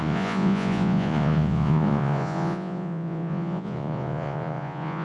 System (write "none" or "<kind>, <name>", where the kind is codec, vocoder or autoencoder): vocoder, Vocos